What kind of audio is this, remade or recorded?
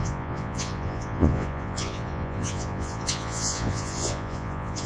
remade